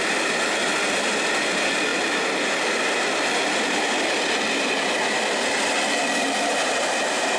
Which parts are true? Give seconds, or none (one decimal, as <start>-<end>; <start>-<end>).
0.0-7.4